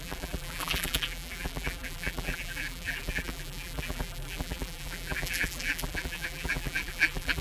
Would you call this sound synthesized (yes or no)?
yes